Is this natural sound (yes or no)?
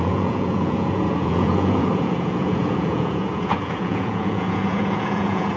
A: no